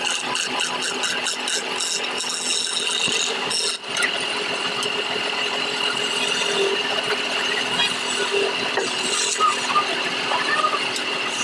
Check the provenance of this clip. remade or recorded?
recorded